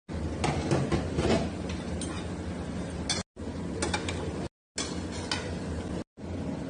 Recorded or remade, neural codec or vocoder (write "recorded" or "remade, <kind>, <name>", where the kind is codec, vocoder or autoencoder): recorded